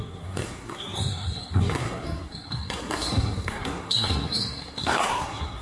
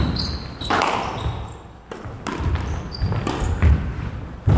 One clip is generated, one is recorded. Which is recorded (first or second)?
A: second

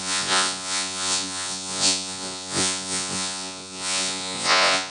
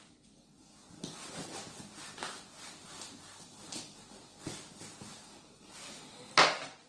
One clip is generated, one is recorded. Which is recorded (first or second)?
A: second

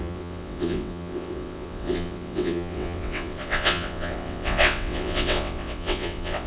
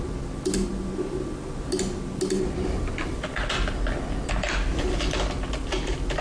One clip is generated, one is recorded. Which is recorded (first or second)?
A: second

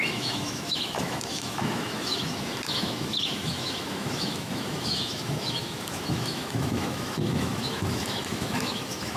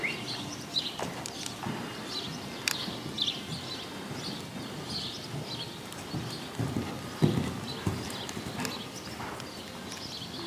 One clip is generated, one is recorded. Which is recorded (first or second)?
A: second